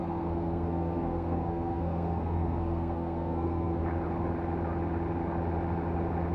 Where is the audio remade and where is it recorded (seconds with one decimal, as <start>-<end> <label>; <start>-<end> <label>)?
0.0-3.8 remade; 3.8-6.3 recorded